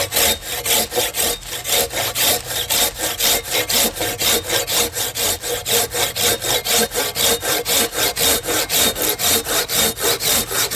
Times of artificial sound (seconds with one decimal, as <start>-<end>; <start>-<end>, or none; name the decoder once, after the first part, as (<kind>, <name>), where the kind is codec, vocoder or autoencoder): 8.3-9.6 (vocoder, BigVGAN v2)